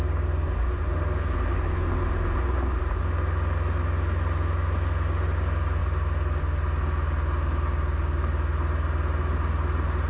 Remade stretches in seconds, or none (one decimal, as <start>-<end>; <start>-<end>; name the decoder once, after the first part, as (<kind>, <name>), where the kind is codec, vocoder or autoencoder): none

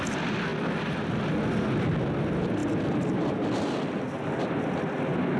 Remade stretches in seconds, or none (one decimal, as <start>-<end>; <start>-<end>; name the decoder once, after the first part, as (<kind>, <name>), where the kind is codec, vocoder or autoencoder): none

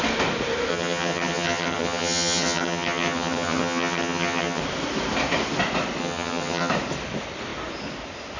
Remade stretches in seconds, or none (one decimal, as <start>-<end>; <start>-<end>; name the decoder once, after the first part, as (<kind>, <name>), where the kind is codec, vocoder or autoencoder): 0.7-4.6 (vocoder, HiFi-GAN); 6.0-6.7

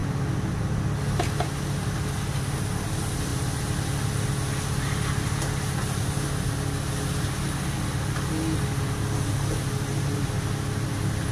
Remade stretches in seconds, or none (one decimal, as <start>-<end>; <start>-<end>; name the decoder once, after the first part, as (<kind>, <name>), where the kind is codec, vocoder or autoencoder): none

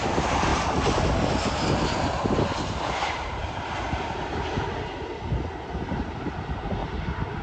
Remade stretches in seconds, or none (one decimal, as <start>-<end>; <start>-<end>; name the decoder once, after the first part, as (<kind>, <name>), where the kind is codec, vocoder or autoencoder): 6.8-7.4 (vocoder, BigVGAN v2)

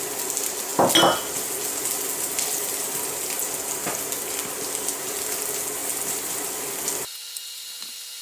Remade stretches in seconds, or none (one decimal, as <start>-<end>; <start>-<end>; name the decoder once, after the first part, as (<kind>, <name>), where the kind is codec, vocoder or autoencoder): 5.8-7.3 (vocoder, BigVGAN v2)

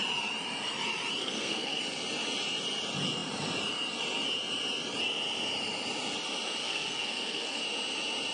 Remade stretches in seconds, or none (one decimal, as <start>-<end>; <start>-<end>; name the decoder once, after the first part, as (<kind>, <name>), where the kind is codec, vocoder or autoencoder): 1.2-1.8 (codec, SNAC); 6.6-7.6

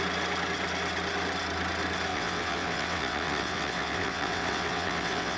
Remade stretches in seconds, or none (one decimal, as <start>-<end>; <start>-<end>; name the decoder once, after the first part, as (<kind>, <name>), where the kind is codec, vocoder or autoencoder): 2.1-5.4 (vocoder, WaveNeXt)